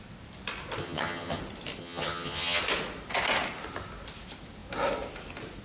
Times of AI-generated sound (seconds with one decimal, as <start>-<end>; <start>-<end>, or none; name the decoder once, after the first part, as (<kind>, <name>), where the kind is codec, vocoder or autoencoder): 0.8-1.4 (vocoder, HiFi-GAN); 1.8-2.6